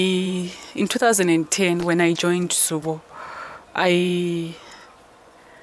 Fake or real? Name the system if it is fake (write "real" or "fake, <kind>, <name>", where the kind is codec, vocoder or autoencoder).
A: fake, vocoder, Vocos